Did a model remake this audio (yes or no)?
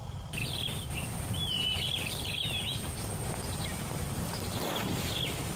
yes